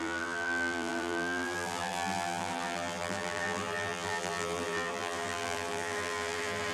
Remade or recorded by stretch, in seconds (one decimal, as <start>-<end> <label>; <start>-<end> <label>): 0.0-6.7 remade